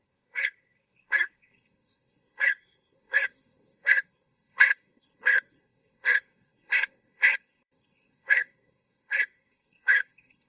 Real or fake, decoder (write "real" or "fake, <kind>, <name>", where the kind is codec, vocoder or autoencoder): fake, codec, SNAC